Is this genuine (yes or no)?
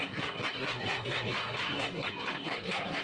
no